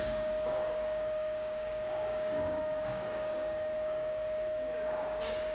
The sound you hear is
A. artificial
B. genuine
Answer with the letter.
A